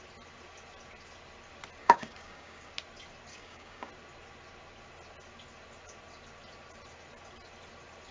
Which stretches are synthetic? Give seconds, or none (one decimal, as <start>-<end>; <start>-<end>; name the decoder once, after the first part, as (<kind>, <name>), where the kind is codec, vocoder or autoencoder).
1.8-2.7 (codec, DAC); 3.3-3.9